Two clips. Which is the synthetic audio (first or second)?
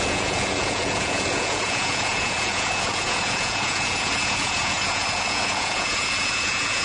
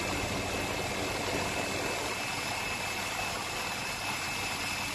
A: first